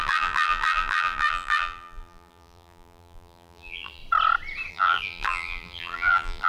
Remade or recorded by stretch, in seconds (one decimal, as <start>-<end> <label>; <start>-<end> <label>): 0.0-4.0 remade; 4.0-4.7 recorded; 4.7-6.5 remade